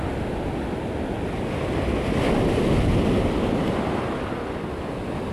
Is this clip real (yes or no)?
yes